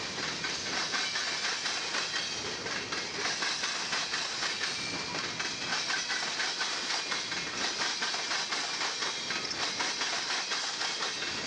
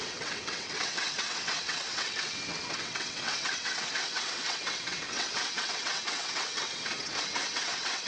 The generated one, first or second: second